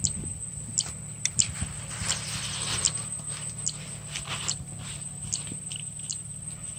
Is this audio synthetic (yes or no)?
no